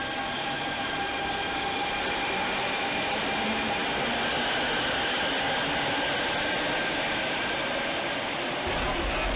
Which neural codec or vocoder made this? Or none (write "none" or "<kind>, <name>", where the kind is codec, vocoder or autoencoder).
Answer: none